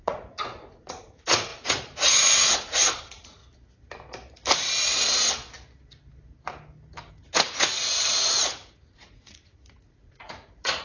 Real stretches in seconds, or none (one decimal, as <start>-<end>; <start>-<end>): 3.4-7.1